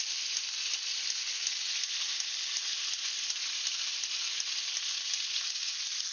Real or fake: real